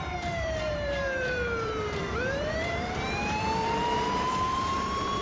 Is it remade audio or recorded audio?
remade